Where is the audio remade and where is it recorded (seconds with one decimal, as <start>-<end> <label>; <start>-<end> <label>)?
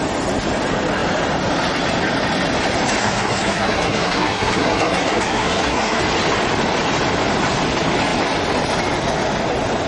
0.0-3.0 recorded; 3.0-6.0 remade; 6.0-9.9 recorded